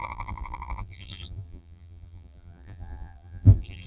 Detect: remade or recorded remade